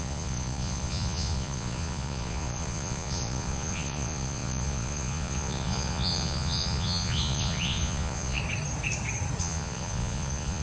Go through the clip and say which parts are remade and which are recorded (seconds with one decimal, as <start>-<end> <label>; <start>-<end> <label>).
0.0-8.4 remade; 8.4-9.4 recorded; 9.4-10.6 remade